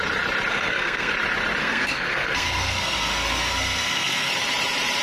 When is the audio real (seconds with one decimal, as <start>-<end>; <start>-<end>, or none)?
0.0-0.5; 1.1-1.6; 4.3-5.0